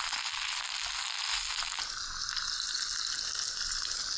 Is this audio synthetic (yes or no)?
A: no